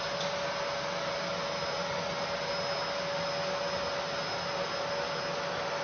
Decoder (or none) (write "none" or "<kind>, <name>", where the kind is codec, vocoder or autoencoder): none